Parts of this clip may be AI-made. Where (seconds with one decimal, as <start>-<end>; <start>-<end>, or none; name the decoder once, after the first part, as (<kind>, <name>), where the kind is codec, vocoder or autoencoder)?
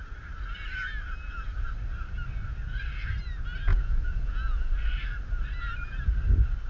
3.7-4.7 (vocoder, Vocos)